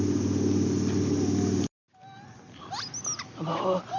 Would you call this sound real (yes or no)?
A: yes